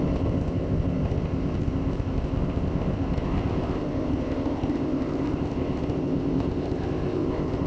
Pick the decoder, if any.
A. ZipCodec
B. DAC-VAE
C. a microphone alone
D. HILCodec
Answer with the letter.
A